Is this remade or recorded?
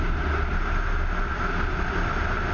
recorded